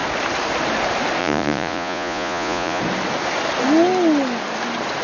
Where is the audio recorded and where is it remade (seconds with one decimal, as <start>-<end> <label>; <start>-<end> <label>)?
0.0-1.2 recorded; 1.2-2.8 remade; 2.8-5.0 recorded